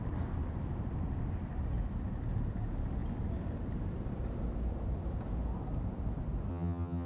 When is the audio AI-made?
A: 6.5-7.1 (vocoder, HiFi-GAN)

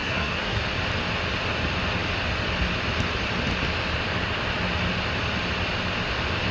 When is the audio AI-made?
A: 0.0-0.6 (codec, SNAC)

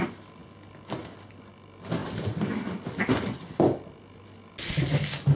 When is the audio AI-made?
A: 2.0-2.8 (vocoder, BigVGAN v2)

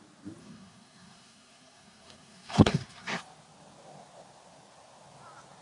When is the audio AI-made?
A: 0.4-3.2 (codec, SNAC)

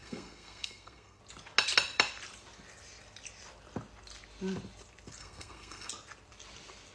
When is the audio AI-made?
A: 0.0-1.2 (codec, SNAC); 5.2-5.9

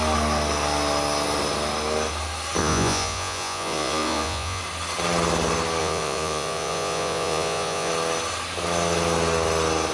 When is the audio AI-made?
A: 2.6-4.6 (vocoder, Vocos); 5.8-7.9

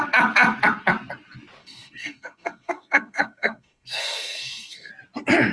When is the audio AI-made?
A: 1.6-4.9 (codec, SNAC)

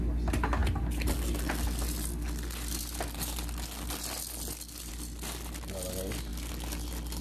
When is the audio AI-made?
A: none